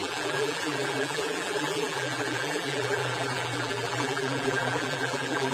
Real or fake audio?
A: fake